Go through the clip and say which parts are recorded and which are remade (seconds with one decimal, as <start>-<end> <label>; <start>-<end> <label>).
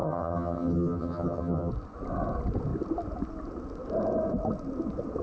0.0-1.7 remade; 1.7-5.2 recorded